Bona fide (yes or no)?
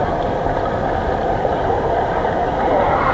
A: yes